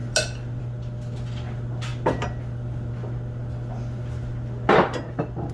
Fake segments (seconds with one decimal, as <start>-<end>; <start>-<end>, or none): none